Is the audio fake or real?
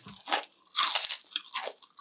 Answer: real